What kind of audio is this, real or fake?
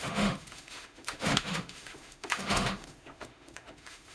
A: fake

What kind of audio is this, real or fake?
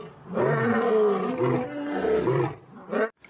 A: real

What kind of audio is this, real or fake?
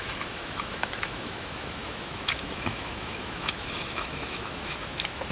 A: fake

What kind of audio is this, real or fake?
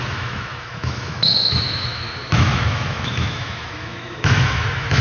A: fake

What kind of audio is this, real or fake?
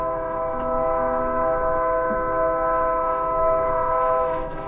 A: fake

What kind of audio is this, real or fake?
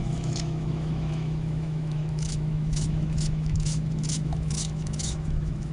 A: fake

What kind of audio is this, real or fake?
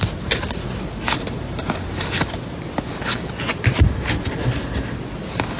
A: real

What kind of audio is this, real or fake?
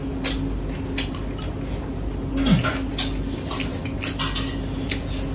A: real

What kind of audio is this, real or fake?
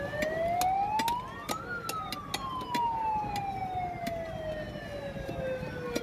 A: real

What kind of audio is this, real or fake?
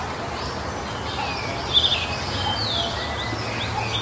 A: real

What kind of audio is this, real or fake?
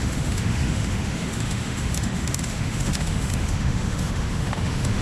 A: fake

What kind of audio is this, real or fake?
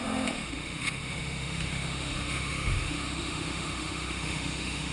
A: fake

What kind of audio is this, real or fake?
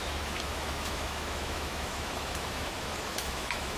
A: fake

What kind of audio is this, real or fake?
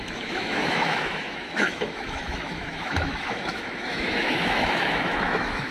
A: fake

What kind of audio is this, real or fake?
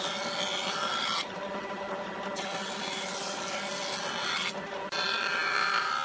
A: real